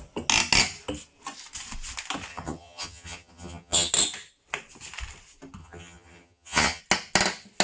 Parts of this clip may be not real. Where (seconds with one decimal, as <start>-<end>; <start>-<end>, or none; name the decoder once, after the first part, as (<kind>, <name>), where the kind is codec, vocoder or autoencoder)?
2.3-3.9 (vocoder, HiFi-GAN); 5.6-6.8